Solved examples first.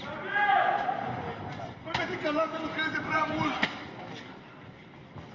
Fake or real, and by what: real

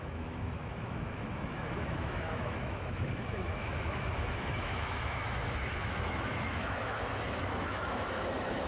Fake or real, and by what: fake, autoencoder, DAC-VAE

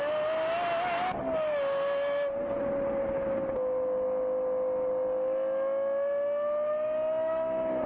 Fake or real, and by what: real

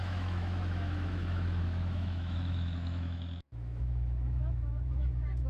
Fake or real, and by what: fake, autoencoder, DAC-VAE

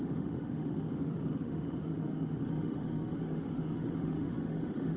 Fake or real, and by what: fake, autoencoder, DAC-VAE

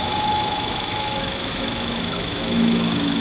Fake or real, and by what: fake, autoencoder, DAC-VAE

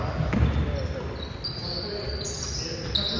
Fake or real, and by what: real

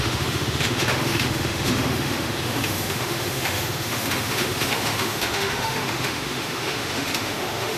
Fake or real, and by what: fake, autoencoder, DAC-VAE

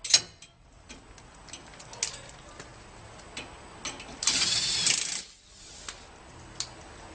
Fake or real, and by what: real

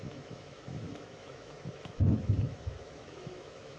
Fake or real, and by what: fake, autoencoder, DAC-VAE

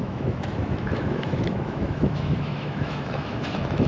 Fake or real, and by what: fake, autoencoder, DAC-VAE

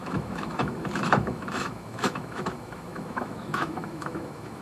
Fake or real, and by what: fake, autoencoder, DAC-VAE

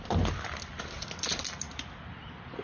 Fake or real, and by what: real